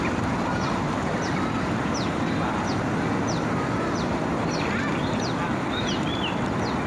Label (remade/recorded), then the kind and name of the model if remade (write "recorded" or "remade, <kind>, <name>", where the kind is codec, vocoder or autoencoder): recorded